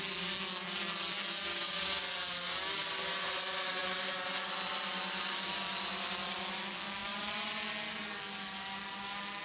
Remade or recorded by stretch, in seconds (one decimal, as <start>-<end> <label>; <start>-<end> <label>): 0.0-1.5 recorded; 1.5-2.0 remade; 2.0-9.4 recorded

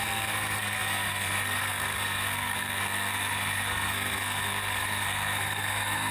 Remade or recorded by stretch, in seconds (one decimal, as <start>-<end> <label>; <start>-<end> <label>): 0.0-6.1 remade

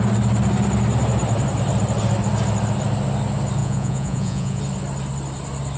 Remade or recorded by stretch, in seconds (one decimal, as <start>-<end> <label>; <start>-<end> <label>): 0.0-3.6 recorded; 3.6-4.6 remade; 4.6-5.8 recorded

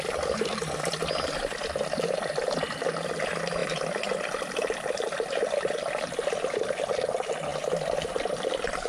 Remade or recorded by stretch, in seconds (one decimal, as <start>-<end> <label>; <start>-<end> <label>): 0.0-8.9 recorded